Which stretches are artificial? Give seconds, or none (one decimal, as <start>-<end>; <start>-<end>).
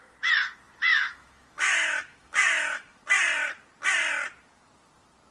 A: 0.9-3.0